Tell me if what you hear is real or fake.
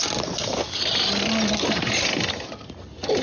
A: real